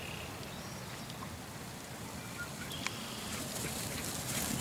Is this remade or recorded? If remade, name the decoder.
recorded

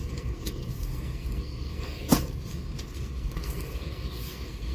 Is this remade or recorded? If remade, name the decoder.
remade, codec, SNAC